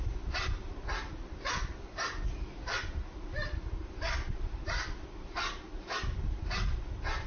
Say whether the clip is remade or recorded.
recorded